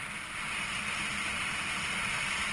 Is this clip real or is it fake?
real